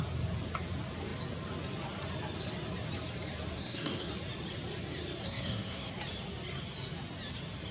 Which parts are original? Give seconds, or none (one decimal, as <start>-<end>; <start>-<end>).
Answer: 0.0-3.5; 4.1-5.2; 5.9-7.7